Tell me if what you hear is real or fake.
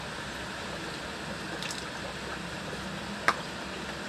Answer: real